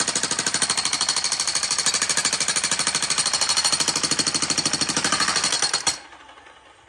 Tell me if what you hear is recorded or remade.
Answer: recorded